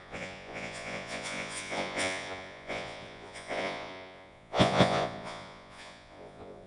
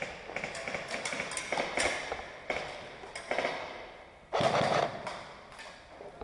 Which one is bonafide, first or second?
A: second